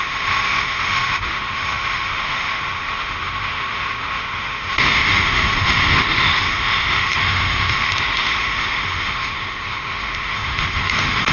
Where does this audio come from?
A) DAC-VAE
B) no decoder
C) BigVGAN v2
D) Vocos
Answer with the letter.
A